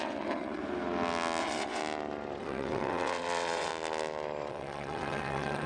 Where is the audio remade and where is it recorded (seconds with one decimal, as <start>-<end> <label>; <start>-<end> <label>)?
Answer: 0.0-0.6 remade; 0.6-1.4 recorded; 1.4-1.8 remade; 1.8-2.4 recorded; 2.4-3.7 remade; 3.7-4.5 recorded; 4.5-5.7 remade